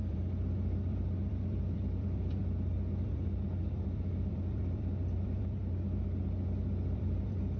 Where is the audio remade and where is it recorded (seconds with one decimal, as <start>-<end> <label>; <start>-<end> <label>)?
0.0-7.6 remade